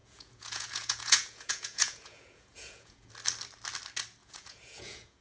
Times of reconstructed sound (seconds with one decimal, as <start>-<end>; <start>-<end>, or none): 0.0-3.1; 4.2-5.2

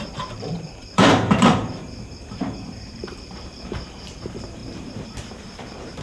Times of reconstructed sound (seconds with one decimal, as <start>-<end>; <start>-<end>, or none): 0.0-6.0

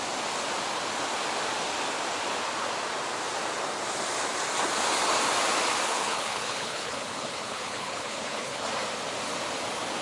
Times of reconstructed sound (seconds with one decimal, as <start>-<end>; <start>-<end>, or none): 5.9-8.6

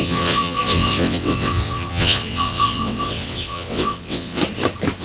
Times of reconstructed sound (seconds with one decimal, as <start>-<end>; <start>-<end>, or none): 0.0-4.4

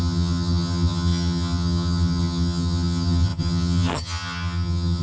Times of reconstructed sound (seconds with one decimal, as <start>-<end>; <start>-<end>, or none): 0.0-5.0